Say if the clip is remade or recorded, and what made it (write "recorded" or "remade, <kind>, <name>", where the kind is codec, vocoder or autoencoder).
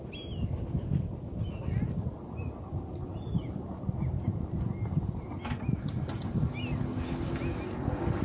recorded